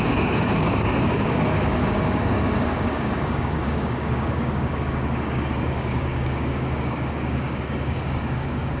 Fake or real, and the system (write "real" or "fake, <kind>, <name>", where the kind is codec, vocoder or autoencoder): fake, codec, DAC